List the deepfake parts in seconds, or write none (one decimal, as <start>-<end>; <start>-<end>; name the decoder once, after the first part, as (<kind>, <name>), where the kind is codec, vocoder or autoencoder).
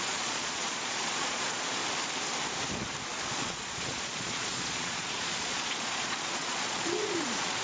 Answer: 0.0-1.8 (vocoder, Vocos); 3.3-7.6